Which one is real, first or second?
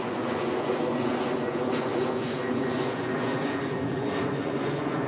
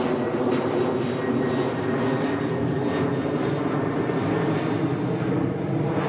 second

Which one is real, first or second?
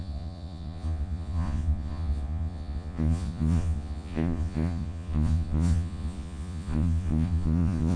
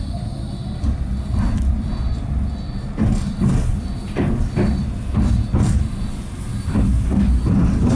second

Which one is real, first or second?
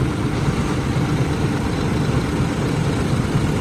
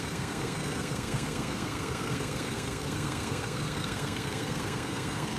first